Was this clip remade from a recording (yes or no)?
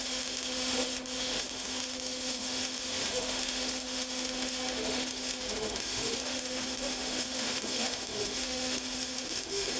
yes